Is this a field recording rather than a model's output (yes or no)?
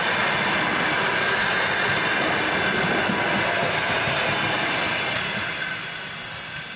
yes